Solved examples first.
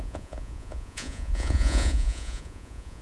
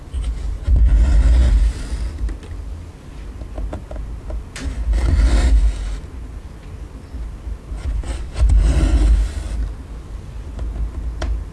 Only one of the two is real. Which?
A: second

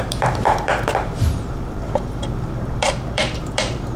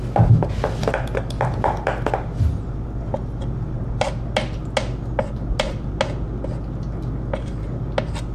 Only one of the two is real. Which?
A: second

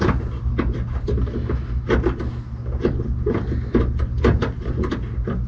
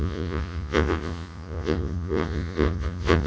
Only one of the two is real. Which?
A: first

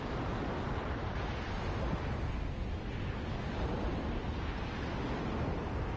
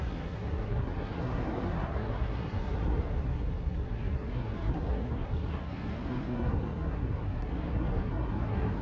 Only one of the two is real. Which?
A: first